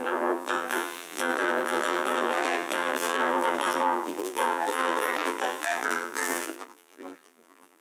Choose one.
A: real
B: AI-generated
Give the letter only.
B